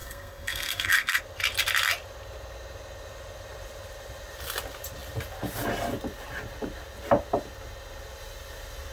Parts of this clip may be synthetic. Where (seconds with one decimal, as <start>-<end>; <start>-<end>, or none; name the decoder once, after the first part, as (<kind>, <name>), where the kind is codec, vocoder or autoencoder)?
0.0-1.2 (codec, SNAC)